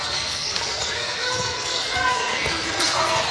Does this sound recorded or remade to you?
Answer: remade